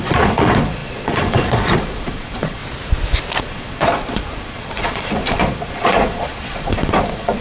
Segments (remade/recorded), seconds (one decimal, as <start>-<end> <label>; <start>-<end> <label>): 0.0-2.6 remade; 2.6-3.4 recorded; 3.4-7.4 remade